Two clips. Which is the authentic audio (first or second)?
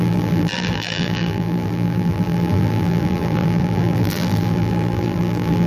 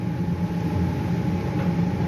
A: second